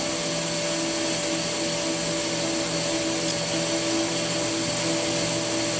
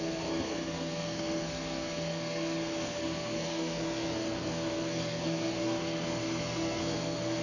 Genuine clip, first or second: first